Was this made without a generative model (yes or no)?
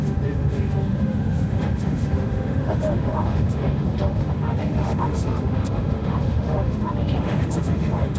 no